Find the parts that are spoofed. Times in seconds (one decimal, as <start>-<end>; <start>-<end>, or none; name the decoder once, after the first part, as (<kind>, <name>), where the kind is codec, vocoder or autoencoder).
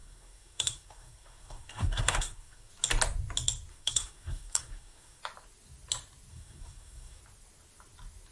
0.0-2.7 (codec, SNAC); 3.7-5.2; 6.3-7.2